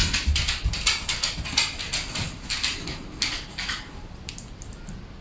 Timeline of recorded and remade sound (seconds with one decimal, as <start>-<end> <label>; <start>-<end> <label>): 0.0-5.2 recorded